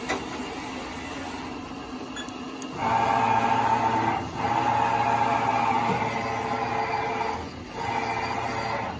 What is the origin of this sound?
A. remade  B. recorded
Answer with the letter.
B